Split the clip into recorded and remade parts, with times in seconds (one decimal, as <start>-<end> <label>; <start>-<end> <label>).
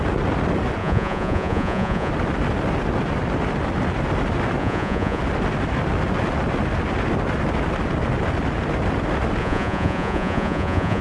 0.0-0.8 recorded; 0.8-2.1 remade; 2.1-4.6 recorded; 4.6-5.2 remade; 5.2-9.4 recorded; 9.4-11.0 remade